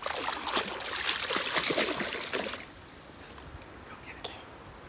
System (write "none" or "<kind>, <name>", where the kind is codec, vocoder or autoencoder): none